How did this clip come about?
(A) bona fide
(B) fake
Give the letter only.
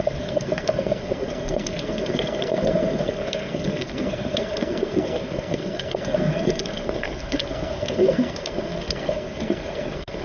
B